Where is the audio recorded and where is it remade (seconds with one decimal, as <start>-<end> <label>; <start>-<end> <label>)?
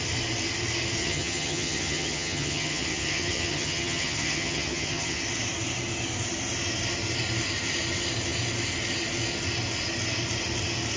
0.0-1.0 recorded; 1.0-5.2 remade; 5.2-11.0 recorded